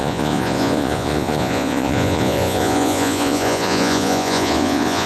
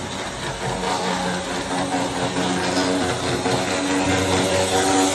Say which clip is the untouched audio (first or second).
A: second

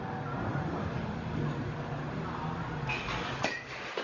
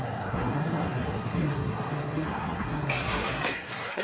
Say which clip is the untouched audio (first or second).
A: first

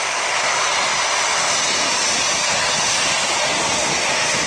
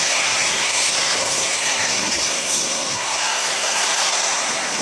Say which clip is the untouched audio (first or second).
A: first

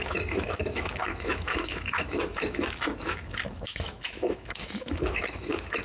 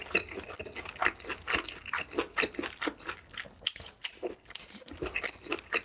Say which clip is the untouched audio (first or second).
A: second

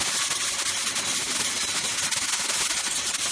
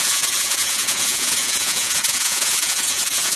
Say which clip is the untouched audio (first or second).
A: first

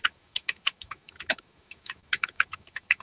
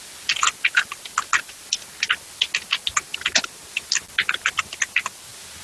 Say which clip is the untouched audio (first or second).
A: second